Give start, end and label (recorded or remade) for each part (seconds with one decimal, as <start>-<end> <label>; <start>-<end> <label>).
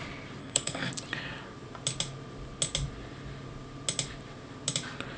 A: 0.0-0.4 recorded; 0.4-0.9 remade; 0.9-5.2 recorded